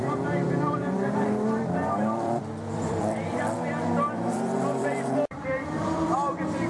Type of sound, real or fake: fake